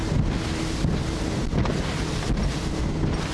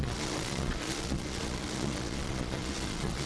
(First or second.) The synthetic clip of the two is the second